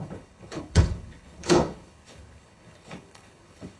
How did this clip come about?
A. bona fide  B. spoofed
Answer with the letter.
B